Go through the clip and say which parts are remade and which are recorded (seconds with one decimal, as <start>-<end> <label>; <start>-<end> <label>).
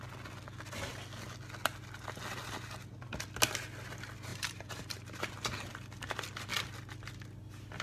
0.0-4.3 recorded; 4.3-5.2 remade; 5.2-7.8 recorded